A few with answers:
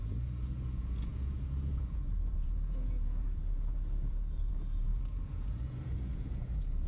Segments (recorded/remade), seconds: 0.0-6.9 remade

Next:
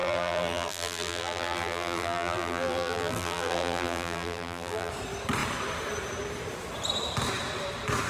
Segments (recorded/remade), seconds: 0.0-4.9 remade; 4.9-8.1 recorded

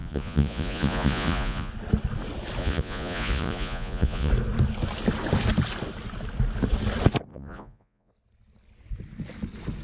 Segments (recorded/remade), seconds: 0.0-1.7 remade; 1.7-2.6 recorded; 2.6-4.3 remade; 4.3-7.3 recorded; 7.3-8.1 remade; 8.1-9.8 recorded